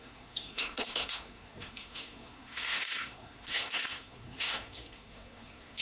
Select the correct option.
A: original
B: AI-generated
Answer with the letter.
B